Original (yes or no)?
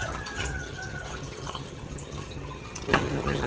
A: no